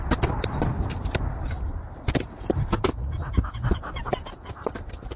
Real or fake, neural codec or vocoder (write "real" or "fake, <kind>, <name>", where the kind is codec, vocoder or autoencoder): real